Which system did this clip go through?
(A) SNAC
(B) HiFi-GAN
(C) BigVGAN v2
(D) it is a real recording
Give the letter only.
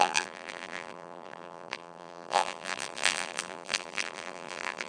C